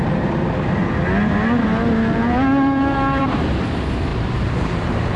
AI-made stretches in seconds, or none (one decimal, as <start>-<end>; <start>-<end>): 0.0-0.8; 3.2-5.2